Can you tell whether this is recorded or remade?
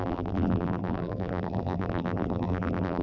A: remade